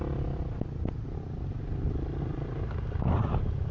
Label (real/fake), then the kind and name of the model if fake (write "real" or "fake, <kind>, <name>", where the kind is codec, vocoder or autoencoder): real